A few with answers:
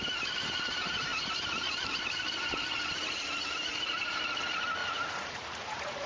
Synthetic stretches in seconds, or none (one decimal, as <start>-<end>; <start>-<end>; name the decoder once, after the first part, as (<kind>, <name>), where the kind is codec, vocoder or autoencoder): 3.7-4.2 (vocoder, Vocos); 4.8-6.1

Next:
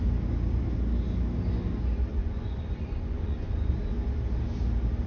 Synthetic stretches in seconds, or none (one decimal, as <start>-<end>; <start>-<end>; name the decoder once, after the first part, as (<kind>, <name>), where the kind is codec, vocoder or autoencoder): 2.1-3.7 (vocoder, Vocos)

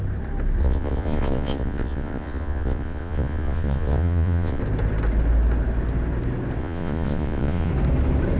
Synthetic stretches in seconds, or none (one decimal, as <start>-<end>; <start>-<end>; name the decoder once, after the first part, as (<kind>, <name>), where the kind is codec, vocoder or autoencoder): 0.6-4.6 (vocoder, Vocos); 6.6-7.7

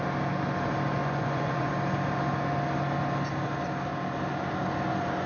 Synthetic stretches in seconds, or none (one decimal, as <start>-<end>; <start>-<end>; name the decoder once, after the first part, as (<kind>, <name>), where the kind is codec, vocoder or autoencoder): 1.0-1.7 (vocoder, Vocos)